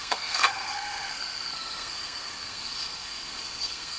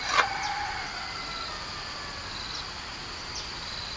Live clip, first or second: second